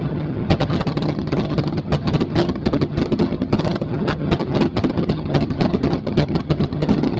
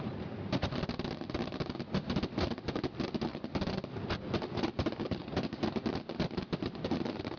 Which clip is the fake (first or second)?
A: first